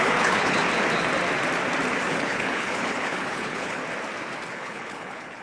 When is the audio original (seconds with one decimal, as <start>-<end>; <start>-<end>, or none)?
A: 0.6-2.1; 3.8-4.5